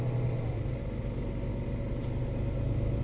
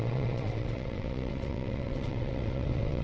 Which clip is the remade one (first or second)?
second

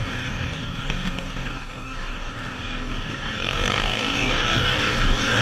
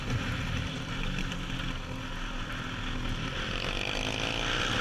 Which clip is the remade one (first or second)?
first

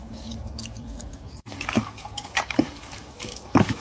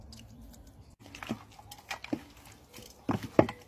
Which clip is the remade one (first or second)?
first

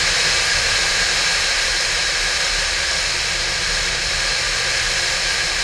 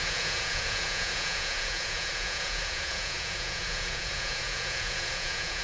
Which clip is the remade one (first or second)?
second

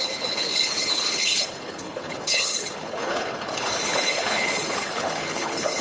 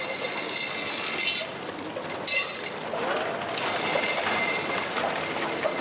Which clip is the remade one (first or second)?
first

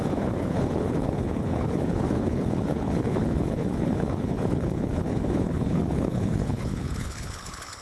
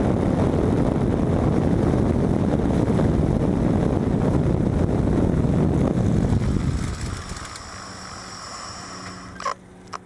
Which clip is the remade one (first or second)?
first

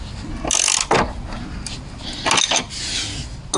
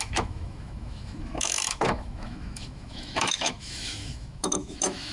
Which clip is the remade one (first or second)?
second